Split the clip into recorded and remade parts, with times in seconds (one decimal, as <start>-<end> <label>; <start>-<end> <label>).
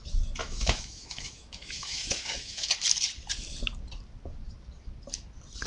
0.0-0.4 recorded; 0.4-2.7 remade; 2.7-5.7 recorded